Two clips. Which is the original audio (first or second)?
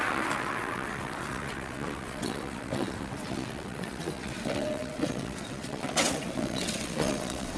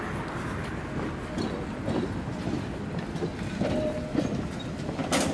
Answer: second